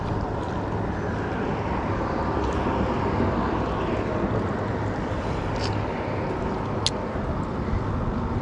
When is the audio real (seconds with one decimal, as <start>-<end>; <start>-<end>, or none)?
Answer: 0.0-8.4